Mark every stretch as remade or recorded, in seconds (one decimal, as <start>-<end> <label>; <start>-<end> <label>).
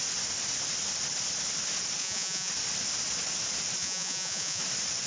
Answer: 0.0-2.0 recorded; 2.0-2.5 remade; 2.5-3.8 recorded; 3.8-4.6 remade; 4.6-5.1 recorded